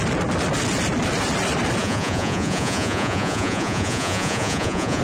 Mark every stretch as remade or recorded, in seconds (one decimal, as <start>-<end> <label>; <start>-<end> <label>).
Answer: 0.0-1.8 recorded; 1.8-5.0 remade